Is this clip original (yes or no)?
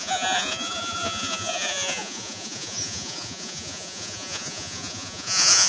no